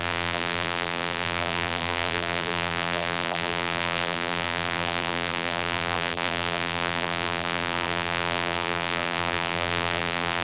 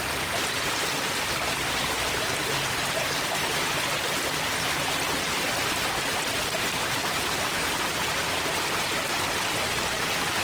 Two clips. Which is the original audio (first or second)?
second